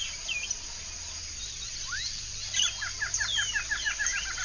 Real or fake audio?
real